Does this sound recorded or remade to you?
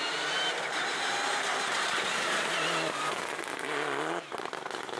recorded